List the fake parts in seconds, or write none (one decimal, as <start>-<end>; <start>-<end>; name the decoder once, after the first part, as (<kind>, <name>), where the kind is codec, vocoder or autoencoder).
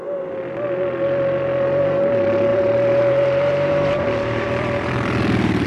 2.5-5.7 (vocoder, BigVGAN v2)